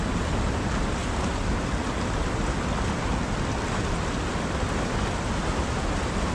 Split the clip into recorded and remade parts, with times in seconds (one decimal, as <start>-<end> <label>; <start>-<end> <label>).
0.0-6.3 recorded